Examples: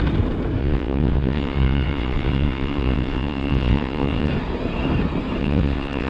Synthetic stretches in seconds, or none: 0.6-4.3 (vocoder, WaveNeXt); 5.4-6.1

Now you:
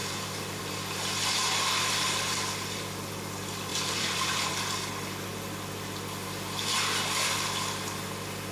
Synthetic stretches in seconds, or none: 0.0-0.6 (vocoder, BigVGAN v2); 3.7-4.5

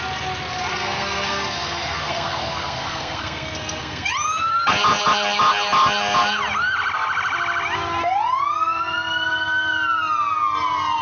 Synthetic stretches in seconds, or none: 0.7-4.1 (codec, SNAC)

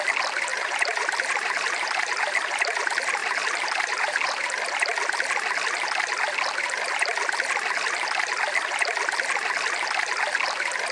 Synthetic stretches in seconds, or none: 0.5-2.8 (vocoder, BigVGAN v2); 3.2-4.4

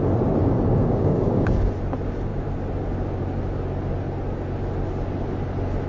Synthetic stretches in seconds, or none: 0.4-1.7 (codec, DAC)

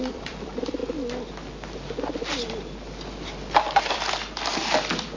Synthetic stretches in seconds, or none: 0.0-0.8 (vocoder, BigVGAN v2); 3.9-5.2

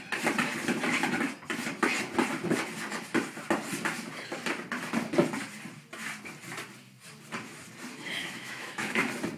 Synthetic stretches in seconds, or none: 8.2-9.0 (autoencoder, DAC-VAE)